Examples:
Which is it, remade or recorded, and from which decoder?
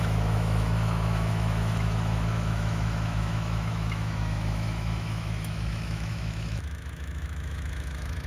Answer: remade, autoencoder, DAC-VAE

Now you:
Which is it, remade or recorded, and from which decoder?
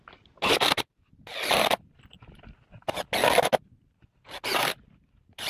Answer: recorded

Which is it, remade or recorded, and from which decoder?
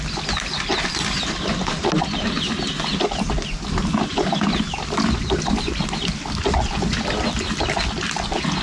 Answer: recorded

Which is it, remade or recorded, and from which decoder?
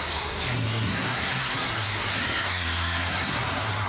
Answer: remade, codec, SNAC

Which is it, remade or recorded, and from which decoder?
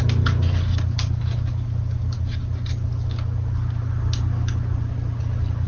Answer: recorded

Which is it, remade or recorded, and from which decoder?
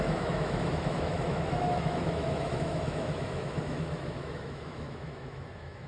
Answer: remade, autoencoder, DAC-VAE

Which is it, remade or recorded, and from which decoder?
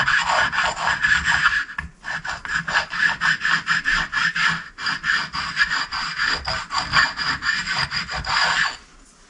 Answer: recorded